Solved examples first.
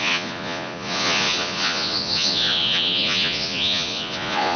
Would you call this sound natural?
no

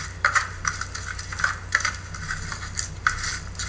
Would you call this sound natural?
yes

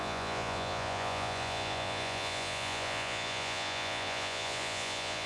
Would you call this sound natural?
no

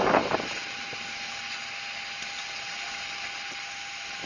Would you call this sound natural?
yes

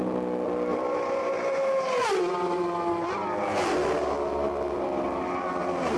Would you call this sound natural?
yes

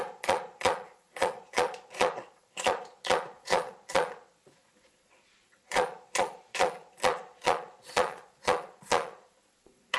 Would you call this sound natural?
no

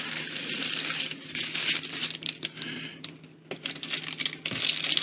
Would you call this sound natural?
yes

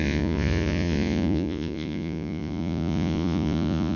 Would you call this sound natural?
no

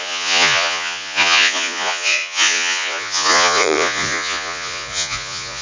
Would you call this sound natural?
no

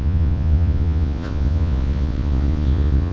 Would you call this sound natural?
no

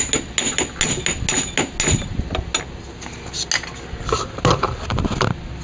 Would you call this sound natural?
yes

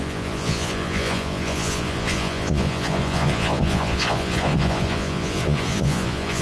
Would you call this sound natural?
no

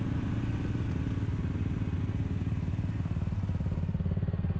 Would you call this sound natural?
yes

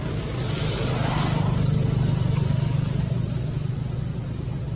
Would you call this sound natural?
yes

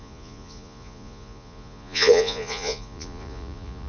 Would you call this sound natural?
no